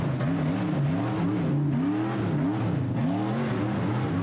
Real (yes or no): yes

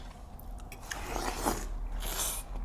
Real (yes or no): yes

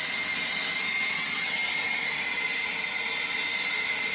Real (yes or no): yes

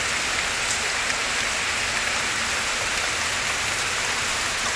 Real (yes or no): yes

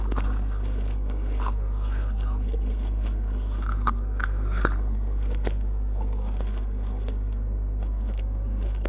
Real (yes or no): no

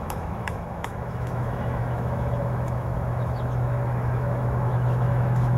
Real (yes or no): no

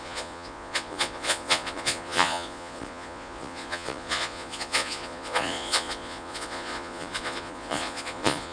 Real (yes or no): no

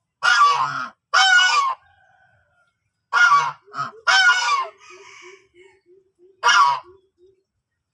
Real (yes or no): yes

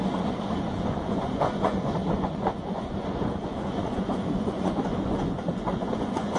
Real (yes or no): no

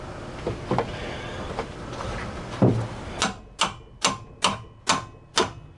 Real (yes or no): yes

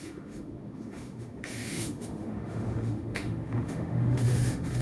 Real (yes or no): no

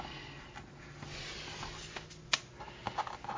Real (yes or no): yes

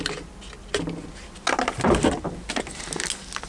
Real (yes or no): yes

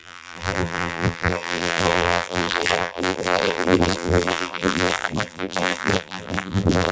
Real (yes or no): no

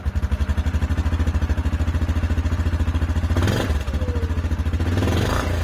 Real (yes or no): yes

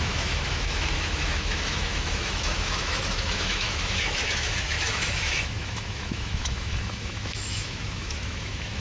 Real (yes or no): no